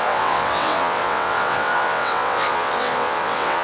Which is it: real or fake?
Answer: fake